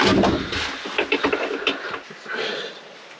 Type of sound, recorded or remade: recorded